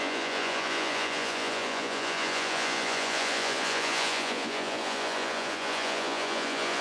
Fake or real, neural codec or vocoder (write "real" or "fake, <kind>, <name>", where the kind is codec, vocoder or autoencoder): fake, vocoder, Vocos